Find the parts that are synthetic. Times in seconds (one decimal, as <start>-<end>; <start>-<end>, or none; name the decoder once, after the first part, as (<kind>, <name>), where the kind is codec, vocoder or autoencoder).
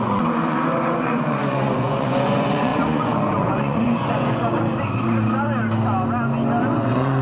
0.0-4.7 (vocoder, Vocos); 6.6-7.2